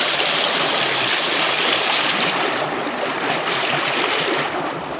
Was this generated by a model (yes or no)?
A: no